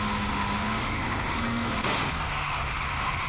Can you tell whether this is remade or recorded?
remade